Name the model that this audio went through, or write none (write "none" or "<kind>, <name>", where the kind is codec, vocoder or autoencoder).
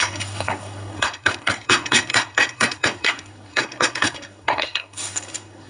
codec, SNAC